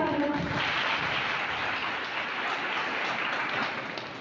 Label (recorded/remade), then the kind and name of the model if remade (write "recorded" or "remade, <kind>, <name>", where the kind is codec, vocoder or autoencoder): recorded